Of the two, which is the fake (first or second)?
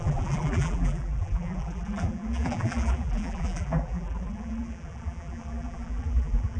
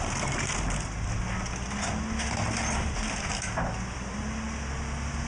first